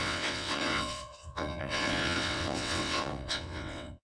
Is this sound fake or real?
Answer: fake